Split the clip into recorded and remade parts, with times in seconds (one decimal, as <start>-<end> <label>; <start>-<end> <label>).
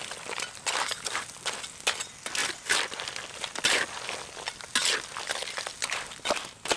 0.0-6.8 recorded